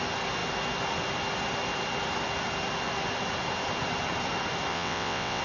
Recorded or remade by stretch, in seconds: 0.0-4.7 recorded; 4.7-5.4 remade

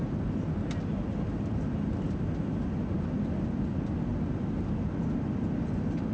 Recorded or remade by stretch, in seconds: 0.0-6.1 recorded

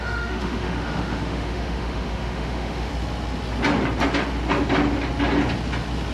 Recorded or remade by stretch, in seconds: 0.0-2.9 remade; 2.9-6.1 recorded

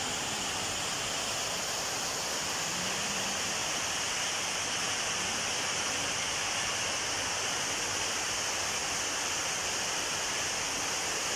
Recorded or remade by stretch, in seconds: 0.0-3.6 recorded; 3.6-7.9 remade; 7.9-8.8 recorded; 8.8-10.5 remade; 10.5-11.4 recorded

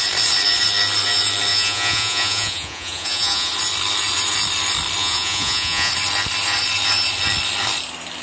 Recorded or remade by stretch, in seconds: 0.0-1.5 recorded; 1.5-3.5 remade; 3.5-5.0 recorded; 5.0-5.9 remade; 5.9-8.2 recorded